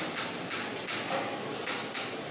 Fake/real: real